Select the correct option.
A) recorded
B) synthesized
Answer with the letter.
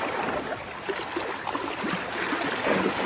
A